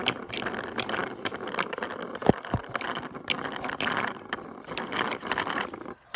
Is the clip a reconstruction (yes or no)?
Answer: no